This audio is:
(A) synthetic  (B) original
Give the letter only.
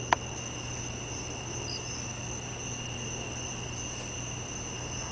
B